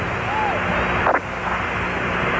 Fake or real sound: real